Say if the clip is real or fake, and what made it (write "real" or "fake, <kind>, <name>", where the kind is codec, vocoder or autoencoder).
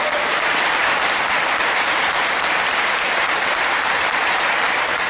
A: fake, vocoder, BigVGAN v2